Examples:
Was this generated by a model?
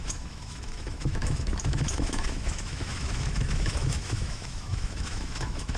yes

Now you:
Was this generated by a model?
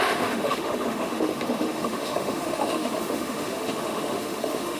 yes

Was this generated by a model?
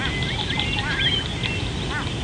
no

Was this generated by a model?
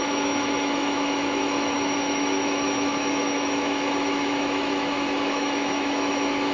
yes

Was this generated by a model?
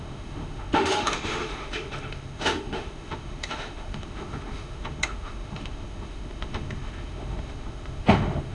yes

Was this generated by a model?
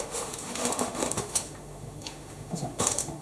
yes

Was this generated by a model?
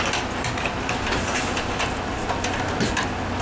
no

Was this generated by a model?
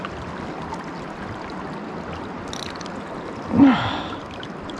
no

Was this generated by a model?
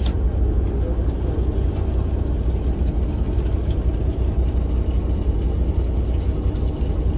no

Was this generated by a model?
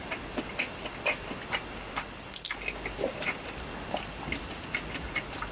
no